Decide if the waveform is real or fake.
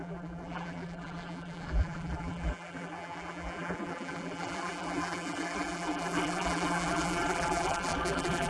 fake